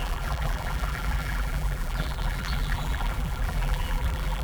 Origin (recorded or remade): remade